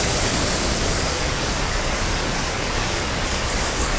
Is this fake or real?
fake